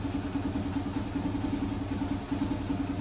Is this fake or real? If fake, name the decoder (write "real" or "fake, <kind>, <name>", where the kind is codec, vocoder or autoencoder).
real